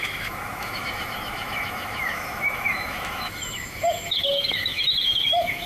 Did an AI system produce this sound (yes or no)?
yes